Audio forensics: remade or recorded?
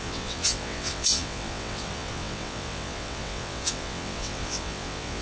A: remade